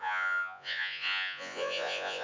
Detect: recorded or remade remade